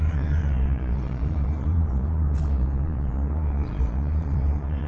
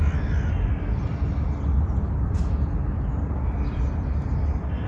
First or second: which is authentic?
second